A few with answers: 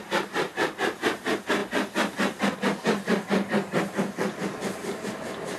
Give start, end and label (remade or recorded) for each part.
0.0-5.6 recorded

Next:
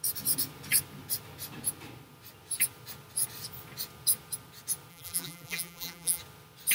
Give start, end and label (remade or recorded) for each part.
0.0-4.9 recorded; 4.9-6.2 remade; 6.2-6.7 recorded

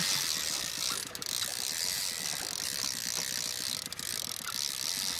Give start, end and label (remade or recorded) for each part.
0.0-1.5 recorded; 1.5-2.4 remade; 2.4-5.2 recorded

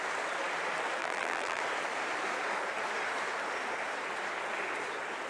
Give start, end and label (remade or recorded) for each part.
0.0-1.0 recorded; 1.0-1.6 remade; 1.6-5.3 recorded

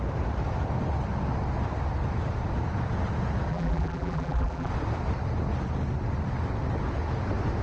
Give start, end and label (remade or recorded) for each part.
0.0-3.5 recorded; 3.5-4.7 remade; 4.7-7.6 recorded

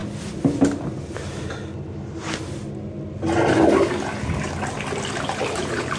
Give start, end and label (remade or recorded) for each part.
0.0-1.1 recorded; 1.1-1.6 remade; 1.6-5.2 recorded; 5.2-6.0 remade